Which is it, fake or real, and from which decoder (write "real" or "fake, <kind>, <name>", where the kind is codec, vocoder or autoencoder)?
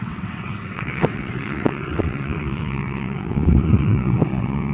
fake, vocoder, WaveNeXt